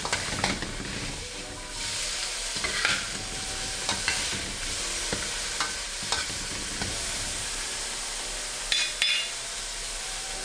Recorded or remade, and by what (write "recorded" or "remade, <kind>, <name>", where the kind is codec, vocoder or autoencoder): recorded